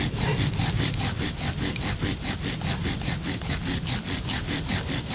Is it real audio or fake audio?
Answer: real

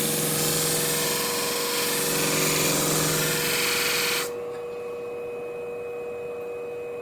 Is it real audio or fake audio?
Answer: real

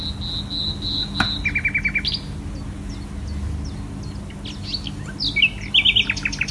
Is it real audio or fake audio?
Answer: real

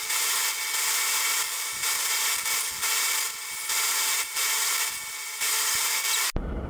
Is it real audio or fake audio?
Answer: real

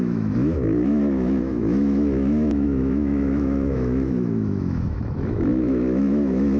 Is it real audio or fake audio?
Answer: fake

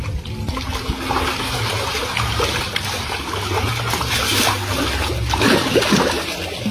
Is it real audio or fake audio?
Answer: real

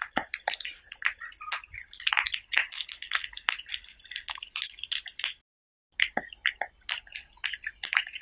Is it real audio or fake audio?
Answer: real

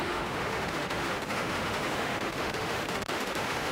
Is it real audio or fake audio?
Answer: fake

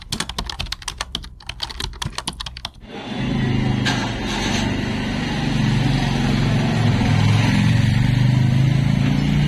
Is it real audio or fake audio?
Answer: real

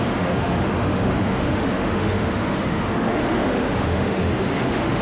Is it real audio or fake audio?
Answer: fake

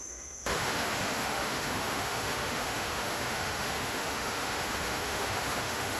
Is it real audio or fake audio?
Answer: fake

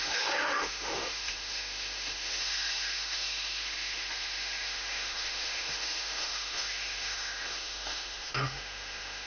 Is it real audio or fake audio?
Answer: fake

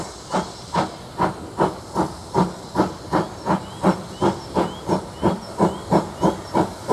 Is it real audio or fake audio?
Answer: real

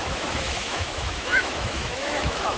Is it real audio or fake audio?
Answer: fake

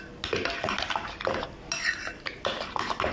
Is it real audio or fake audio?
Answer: real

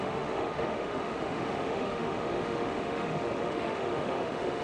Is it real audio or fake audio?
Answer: fake